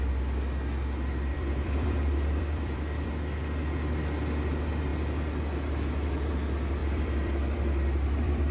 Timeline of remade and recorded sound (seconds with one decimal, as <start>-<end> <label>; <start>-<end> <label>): 0.0-1.3 recorded; 1.3-3.1 remade; 3.1-6.8 recorded; 6.8-8.5 remade